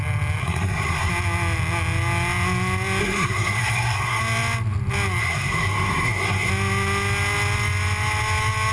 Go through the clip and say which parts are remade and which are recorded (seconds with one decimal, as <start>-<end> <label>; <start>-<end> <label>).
0.0-0.4 recorded; 0.4-1.1 remade; 1.1-3.0 recorded; 3.0-4.2 remade; 4.2-5.2 recorded; 5.2-6.5 remade; 6.5-8.7 recorded